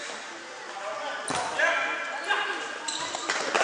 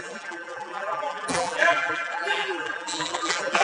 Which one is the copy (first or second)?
second